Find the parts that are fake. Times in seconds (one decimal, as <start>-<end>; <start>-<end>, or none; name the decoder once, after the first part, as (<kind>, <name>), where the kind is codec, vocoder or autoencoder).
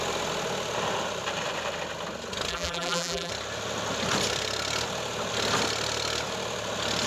2.5-3.3 (vocoder, BigVGAN v2)